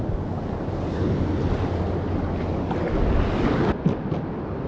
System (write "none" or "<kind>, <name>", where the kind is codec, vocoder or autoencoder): none